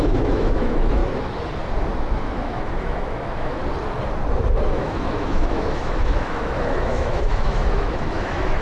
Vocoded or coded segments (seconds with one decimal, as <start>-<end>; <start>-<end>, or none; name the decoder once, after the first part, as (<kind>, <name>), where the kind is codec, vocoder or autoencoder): 0.0-1.0 (autoencoder, DAC-VAE); 2.1-3.6; 4.7-8.6